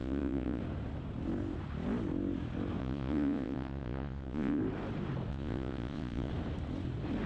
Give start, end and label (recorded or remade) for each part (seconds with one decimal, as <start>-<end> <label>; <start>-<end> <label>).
0.0-0.6 remade; 0.6-2.8 recorded; 2.8-4.6 remade; 4.6-5.3 recorded; 5.3-6.3 remade; 6.3-7.3 recorded